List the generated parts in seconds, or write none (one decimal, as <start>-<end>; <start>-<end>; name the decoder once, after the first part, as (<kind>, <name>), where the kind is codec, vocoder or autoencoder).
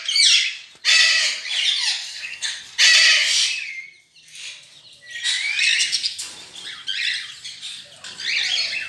2.1-2.6 (codec, SNAC)